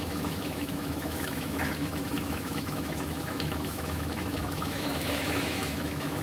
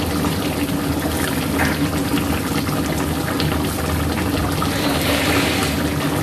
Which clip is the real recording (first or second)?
second